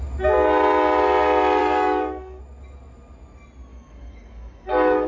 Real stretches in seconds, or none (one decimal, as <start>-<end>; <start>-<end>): 0.0-1.6; 2.4-3.7

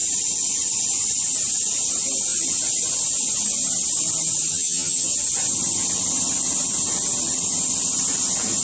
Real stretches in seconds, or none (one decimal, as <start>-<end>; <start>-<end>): 0.0-4.5; 5.1-8.6